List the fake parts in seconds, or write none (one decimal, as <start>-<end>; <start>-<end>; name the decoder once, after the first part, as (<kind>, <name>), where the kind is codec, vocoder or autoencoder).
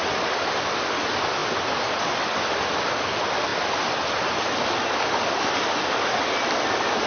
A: none